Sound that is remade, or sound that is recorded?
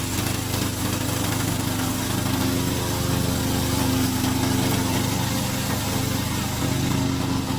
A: recorded